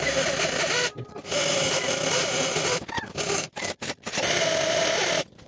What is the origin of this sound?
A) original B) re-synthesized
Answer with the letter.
A